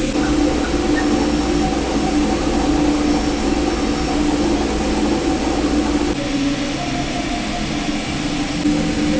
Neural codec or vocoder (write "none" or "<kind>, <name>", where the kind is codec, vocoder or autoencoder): none